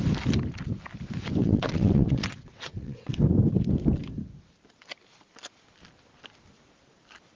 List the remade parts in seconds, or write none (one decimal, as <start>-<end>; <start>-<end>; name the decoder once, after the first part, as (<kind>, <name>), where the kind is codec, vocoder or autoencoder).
1.4-3.1 (vocoder, WaveNeXt)